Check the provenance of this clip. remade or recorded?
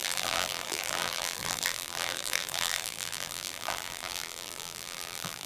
remade